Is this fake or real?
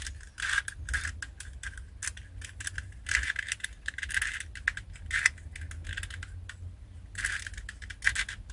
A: real